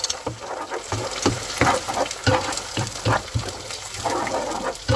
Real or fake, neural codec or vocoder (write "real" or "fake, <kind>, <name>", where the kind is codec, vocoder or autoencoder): fake, vocoder, BigVGAN v2